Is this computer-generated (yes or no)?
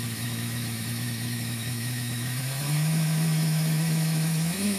yes